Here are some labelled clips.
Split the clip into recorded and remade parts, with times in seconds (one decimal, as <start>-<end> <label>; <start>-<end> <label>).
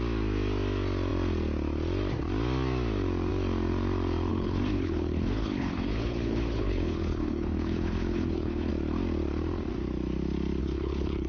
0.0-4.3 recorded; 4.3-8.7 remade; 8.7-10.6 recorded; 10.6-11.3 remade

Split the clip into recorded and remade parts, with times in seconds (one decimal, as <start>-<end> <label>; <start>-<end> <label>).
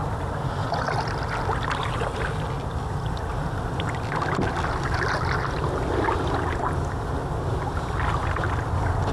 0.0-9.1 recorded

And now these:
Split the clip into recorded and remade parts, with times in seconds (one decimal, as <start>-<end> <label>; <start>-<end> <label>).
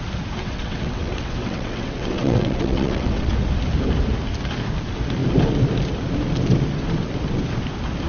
0.0-0.4 recorded; 0.4-3.3 remade; 3.3-8.1 recorded